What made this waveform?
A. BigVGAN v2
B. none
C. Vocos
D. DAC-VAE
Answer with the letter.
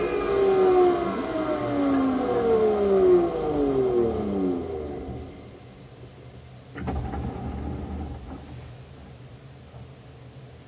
B